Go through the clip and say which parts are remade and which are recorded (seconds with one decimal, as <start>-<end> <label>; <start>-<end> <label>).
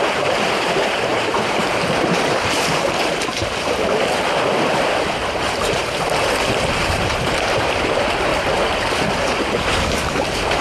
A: 0.0-3.4 remade; 3.4-4.7 recorded; 4.7-8.3 remade; 8.3-9.7 recorded; 9.7-10.6 remade